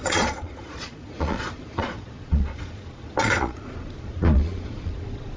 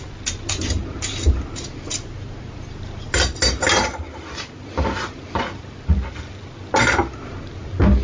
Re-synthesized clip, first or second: first